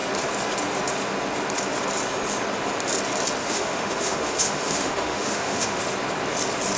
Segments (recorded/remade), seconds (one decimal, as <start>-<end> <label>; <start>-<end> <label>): 0.0-3.4 recorded; 3.4-5.8 remade; 5.8-6.8 recorded